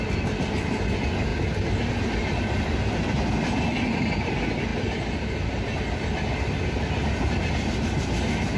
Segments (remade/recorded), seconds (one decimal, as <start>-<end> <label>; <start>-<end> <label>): 0.0-8.6 recorded

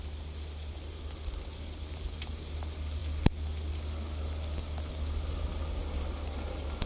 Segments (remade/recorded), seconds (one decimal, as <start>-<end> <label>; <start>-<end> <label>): 0.0-6.9 recorded

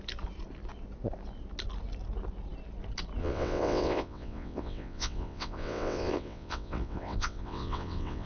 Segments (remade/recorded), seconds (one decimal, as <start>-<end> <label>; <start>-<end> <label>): 0.0-3.2 recorded; 3.2-8.3 remade

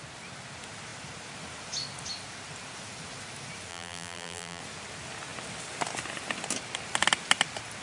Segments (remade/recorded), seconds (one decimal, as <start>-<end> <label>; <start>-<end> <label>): 0.0-3.7 recorded; 3.7-4.6 remade; 4.6-7.8 recorded